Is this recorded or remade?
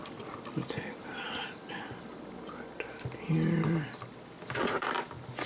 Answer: remade